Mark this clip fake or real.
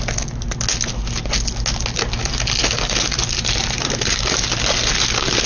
real